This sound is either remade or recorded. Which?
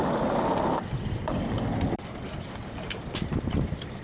recorded